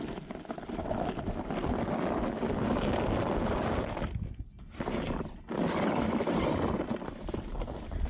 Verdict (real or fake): real